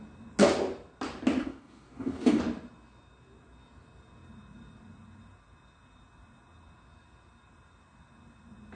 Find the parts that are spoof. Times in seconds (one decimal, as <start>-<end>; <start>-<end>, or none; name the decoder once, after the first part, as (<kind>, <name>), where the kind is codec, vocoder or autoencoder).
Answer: 1.4-2.4 (codec, DAC)